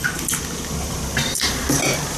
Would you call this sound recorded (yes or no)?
no